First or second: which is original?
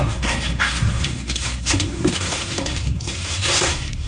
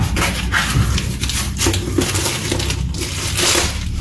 second